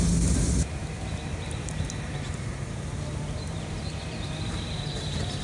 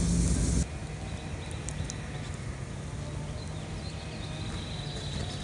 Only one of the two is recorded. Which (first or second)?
second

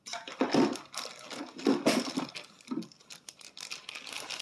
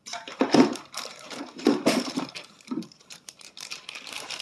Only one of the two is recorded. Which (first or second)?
first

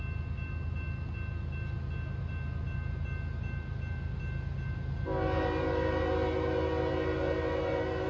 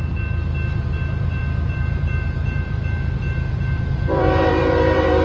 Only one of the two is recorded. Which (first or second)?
first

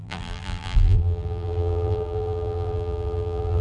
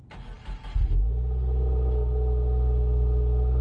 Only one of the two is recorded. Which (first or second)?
second